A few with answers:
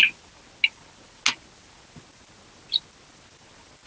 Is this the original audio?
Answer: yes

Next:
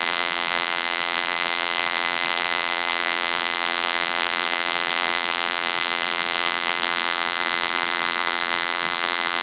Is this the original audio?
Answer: no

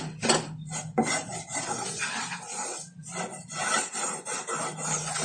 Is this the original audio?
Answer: yes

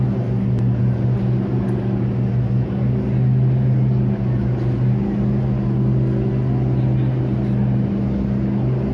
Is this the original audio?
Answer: yes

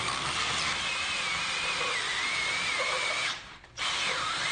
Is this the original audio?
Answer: no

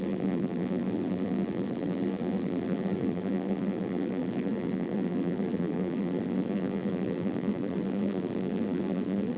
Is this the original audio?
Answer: no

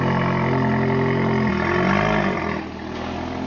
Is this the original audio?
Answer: yes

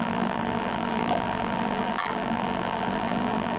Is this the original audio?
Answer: no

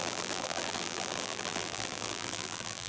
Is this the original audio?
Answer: no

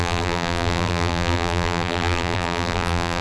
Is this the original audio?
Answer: no